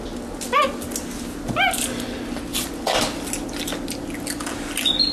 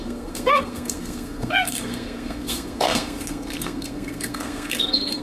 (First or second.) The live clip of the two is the first